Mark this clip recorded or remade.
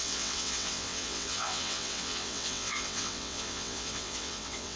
remade